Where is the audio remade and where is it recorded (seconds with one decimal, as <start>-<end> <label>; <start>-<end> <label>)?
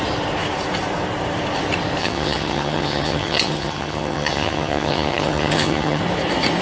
0.0-2.0 recorded; 2.0-6.0 remade; 6.0-6.6 recorded